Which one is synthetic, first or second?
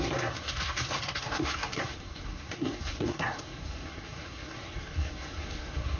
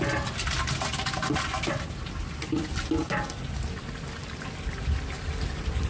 first